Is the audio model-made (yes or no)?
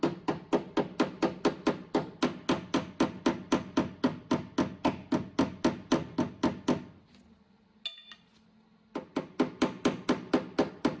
no